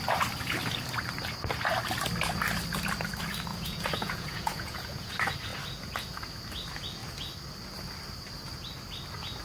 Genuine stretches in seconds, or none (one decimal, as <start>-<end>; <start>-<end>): 0.0-3.5; 5.1-9.4